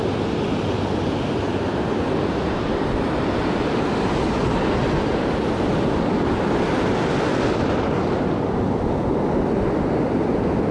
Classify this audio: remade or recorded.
recorded